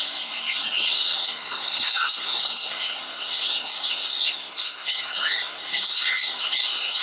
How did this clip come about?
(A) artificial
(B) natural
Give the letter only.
A